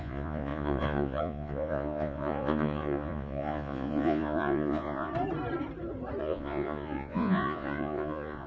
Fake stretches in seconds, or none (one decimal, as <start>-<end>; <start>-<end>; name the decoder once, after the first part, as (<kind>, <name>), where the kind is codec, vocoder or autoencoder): 0.0-5.1 (vocoder, Vocos); 6.2-8.5